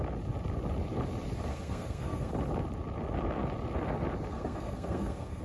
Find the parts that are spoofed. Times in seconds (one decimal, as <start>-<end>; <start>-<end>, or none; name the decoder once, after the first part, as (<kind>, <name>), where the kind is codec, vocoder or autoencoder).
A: 1.5-2.3 (codec, SNAC); 4.3-5.4